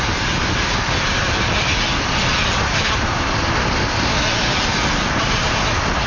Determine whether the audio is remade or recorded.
recorded